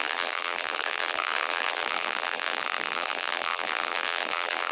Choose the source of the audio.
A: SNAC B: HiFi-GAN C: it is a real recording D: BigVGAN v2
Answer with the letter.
D